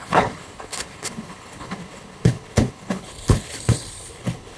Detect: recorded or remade remade